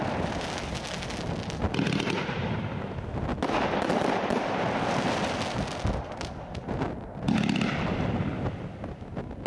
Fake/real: real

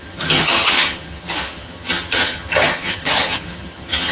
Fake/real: fake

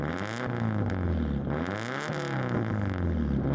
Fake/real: real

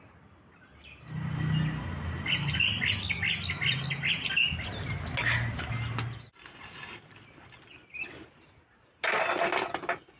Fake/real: real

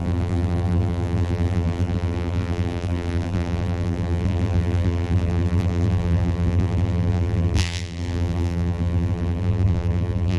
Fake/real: fake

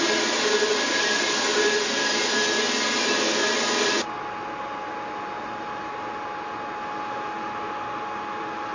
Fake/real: real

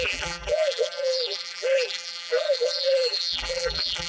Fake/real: fake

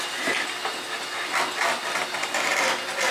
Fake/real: real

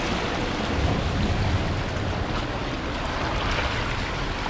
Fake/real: real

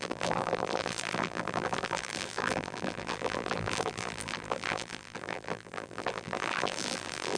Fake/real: fake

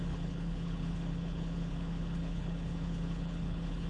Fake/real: fake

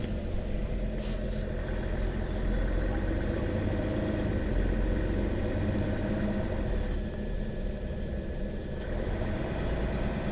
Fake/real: real